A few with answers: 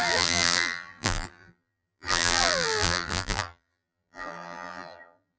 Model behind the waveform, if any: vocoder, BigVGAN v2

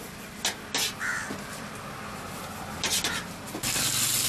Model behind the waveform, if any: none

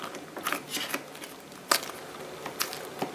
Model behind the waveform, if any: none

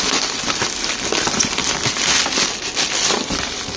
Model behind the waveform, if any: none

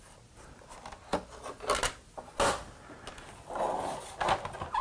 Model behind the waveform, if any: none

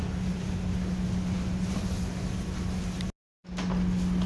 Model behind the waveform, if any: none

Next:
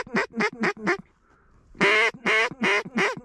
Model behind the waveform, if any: none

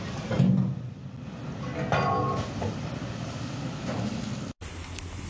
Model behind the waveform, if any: none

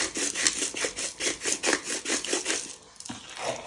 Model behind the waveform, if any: none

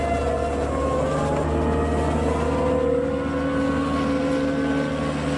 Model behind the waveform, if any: none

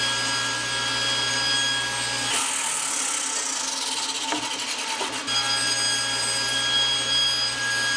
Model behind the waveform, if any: none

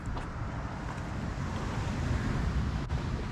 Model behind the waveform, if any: none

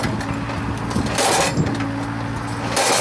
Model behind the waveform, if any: none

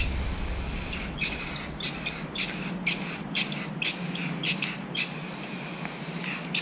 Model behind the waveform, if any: none